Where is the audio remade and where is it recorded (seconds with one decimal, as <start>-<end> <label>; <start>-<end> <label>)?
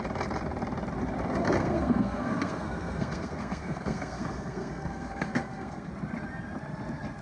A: 0.0-1.6 recorded; 1.6-5.9 remade; 5.9-7.2 recorded